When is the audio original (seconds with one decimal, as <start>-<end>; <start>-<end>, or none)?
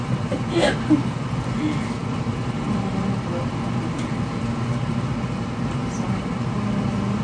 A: 0.0-7.2